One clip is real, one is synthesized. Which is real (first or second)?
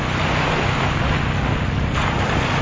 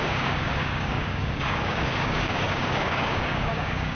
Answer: first